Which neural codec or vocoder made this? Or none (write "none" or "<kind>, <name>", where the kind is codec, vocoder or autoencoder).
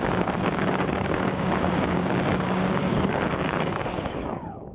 codec, DAC